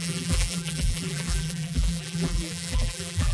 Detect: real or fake fake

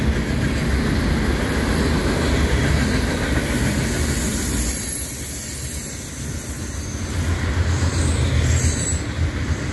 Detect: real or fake real